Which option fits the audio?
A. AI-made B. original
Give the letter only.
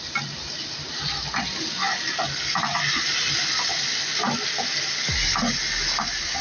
B